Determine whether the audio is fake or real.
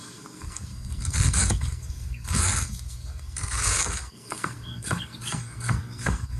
fake